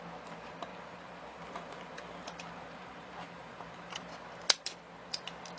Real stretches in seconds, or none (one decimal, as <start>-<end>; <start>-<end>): 0.0-0.7; 4.1-5.6